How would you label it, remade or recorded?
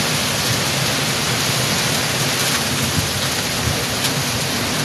recorded